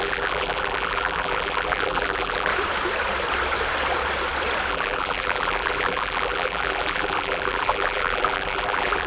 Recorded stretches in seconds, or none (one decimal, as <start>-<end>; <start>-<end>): 2.5-4.7